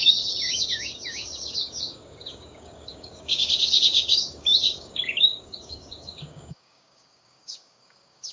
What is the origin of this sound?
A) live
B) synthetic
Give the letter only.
B